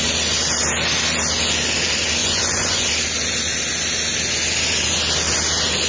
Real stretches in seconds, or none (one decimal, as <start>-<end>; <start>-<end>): 0.0-2.2; 2.9-5.9